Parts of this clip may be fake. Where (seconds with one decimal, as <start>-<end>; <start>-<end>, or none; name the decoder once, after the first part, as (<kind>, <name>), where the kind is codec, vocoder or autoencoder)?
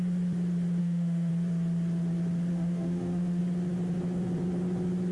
0.8-1.3 (autoencoder, DAC-VAE); 2.5-3.4